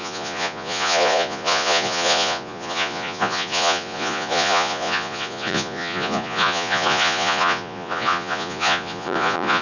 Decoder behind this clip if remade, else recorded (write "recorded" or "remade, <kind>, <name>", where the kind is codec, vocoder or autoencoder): remade, vocoder, Vocos